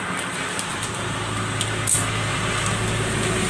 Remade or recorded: recorded